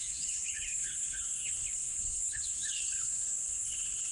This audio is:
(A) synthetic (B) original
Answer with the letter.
A